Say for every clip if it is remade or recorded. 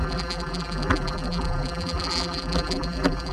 remade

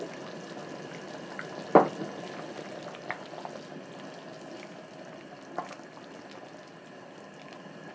recorded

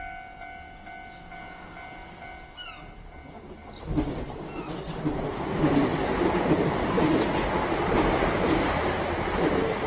recorded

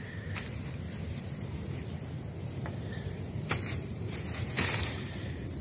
remade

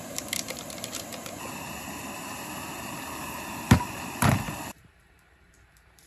remade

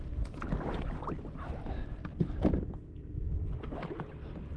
remade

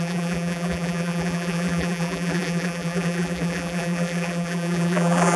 remade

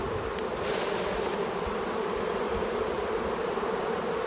recorded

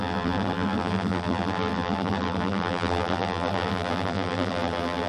remade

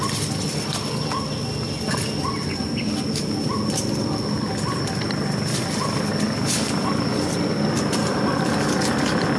recorded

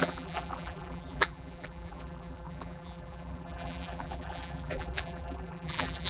remade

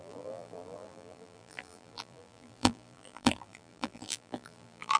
remade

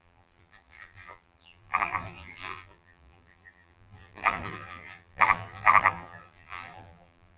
remade